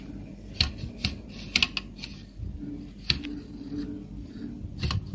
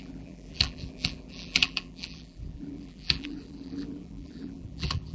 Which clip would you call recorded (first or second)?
first